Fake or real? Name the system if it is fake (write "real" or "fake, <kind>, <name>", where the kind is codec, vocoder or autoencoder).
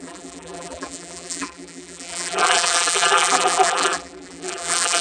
fake, vocoder, BigVGAN v2